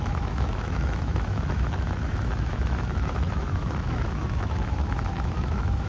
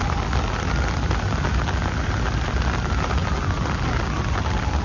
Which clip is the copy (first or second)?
first